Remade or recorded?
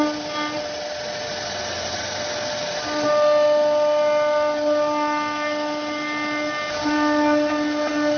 recorded